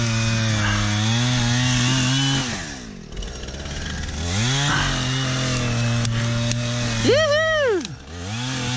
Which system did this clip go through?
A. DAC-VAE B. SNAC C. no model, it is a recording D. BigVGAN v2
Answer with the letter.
C